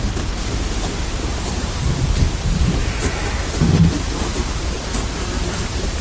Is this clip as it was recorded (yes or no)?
no